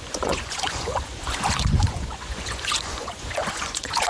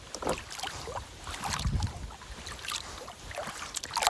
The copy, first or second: first